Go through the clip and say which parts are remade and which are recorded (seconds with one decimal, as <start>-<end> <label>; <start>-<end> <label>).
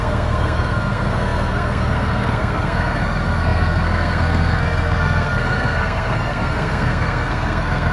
0.0-7.9 remade